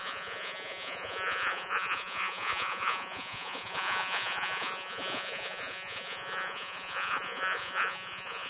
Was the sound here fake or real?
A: fake